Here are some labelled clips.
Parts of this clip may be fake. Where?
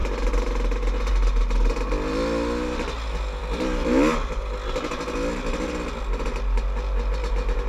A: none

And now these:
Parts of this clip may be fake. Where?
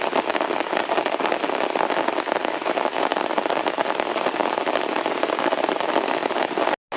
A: none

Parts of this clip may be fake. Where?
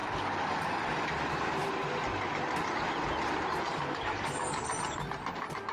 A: 0.0-1.1 (codec, DAC); 3.7-4.7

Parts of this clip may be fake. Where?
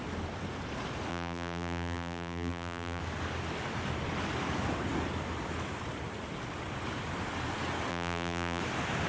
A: 1.1-3.0 (vocoder, BigVGAN v2); 7.9-8.6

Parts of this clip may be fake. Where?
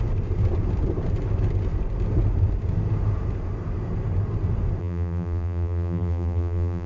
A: 4.8-6.9 (vocoder, BigVGAN v2)